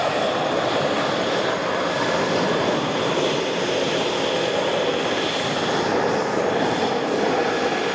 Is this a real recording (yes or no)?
yes